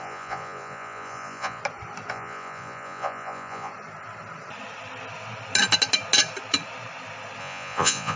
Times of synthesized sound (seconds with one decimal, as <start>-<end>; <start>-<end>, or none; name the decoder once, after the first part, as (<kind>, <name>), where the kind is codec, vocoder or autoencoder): 0.0-1.6 (vocoder, Vocos); 2.1-3.7; 7.4-8.2